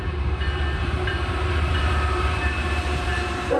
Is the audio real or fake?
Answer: fake